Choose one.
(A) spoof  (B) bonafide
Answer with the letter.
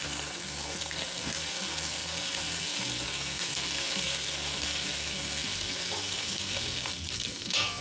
A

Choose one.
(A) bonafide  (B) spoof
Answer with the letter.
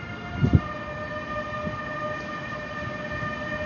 A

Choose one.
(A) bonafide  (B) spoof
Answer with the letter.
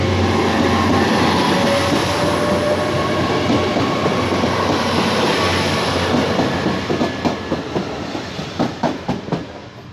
A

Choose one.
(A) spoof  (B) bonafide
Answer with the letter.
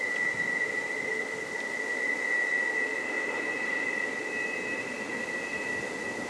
B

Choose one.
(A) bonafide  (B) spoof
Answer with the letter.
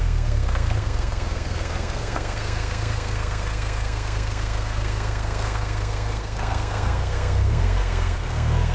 B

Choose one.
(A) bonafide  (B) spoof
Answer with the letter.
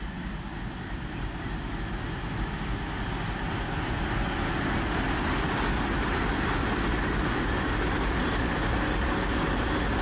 A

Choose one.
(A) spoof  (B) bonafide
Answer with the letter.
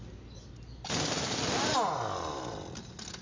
B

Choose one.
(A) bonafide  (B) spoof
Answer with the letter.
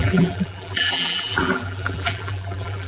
B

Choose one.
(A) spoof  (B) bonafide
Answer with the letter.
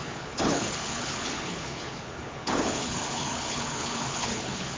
A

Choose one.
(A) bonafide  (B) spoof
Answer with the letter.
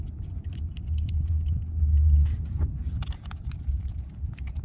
A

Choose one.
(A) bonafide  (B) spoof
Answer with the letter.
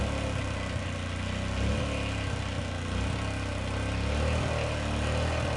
A